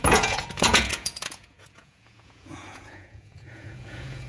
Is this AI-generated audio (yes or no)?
yes